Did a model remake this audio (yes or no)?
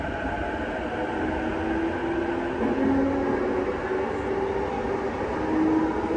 no